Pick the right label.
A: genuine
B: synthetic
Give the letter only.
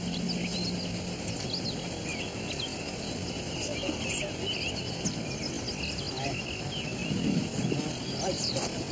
A